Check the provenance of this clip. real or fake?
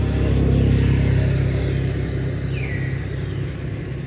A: real